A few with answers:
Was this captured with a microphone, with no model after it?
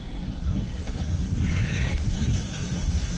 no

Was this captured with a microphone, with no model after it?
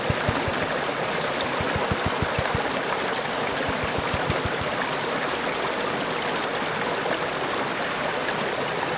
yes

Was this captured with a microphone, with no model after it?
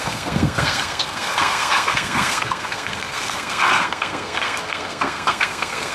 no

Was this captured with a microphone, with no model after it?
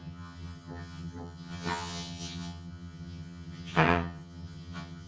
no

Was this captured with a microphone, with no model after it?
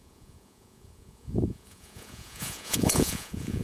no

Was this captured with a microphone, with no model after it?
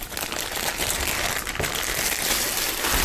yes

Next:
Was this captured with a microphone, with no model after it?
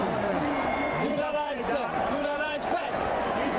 no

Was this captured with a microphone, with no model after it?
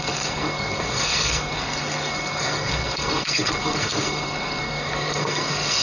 no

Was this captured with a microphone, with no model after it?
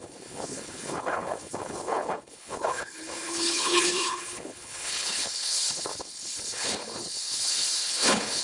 no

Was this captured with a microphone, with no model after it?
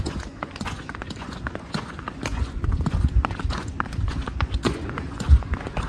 no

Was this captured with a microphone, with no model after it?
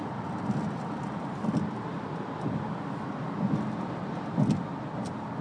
yes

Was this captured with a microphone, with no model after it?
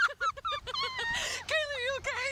yes